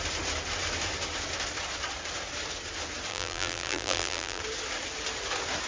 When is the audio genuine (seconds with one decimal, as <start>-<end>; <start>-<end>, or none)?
0.0-3.1; 4.4-5.7